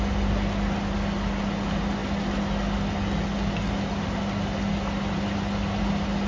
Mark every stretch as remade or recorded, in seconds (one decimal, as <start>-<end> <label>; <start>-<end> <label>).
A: 0.0-6.3 recorded